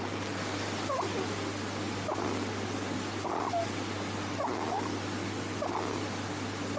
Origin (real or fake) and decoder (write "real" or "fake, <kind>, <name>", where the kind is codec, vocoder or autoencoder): real